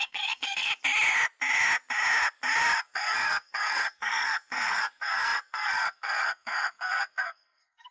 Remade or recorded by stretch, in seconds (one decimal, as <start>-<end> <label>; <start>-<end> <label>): 0.0-0.7 remade; 0.7-2.8 recorded; 2.8-7.9 remade